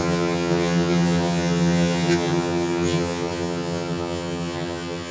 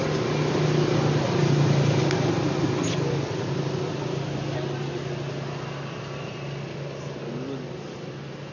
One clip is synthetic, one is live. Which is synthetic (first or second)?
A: first